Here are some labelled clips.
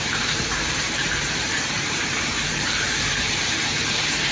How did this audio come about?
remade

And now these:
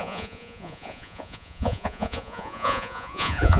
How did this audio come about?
remade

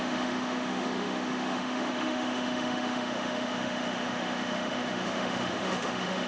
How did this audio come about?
remade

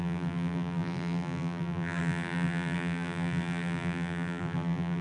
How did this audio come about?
remade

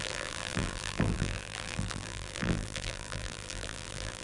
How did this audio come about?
remade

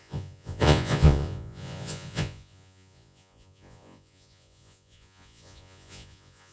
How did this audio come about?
remade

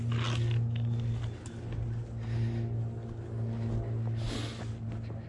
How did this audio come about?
recorded